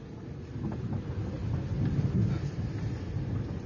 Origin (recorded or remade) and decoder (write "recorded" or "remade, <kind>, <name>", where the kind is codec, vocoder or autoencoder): recorded